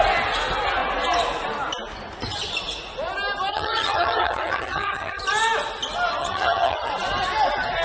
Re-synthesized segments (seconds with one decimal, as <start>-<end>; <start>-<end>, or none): 3.5-5.2; 6.2-6.9